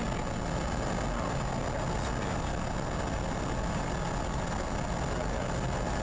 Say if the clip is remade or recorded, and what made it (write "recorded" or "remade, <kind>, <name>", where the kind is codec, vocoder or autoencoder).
recorded